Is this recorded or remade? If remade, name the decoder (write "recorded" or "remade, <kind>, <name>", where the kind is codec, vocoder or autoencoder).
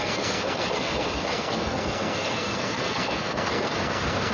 remade, codec, SNAC